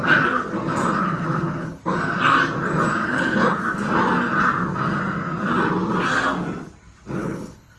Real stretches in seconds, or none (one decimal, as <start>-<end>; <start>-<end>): 0.0-1.0; 1.8-3.1; 3.6-7.2